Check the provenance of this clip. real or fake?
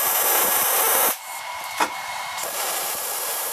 fake